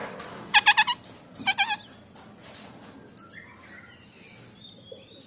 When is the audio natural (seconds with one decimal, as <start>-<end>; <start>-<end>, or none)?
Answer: 0.0-5.3